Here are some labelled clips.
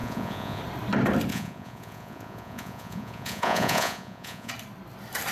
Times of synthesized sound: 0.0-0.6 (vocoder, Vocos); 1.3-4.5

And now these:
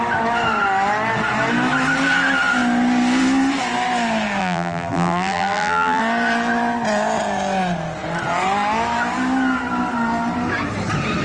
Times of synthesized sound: 4.4-6.0 (vocoder, BigVGAN v2)

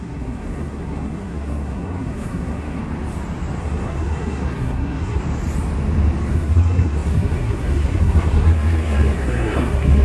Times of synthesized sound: 0.0-2.8 (codec, SNAC); 3.6-5.2; 6.3-10.0

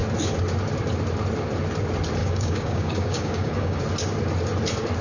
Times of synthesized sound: 2.2-3.8 (codec, DAC)

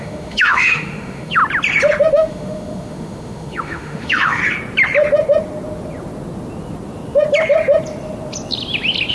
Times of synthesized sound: 0.0-1.4 (autoencoder, DAC-VAE); 2.1-4.4